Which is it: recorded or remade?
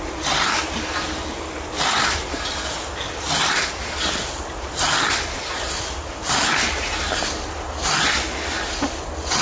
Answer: recorded